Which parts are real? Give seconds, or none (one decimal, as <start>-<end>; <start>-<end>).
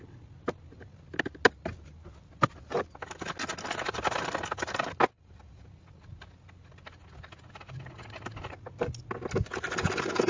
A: 0.0-10.3